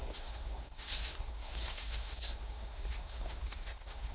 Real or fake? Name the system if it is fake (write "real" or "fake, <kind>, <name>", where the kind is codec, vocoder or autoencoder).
fake, codec, SNAC